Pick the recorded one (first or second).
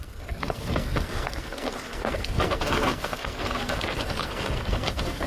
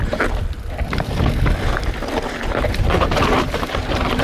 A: second